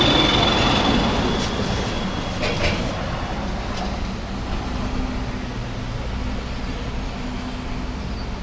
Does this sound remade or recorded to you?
recorded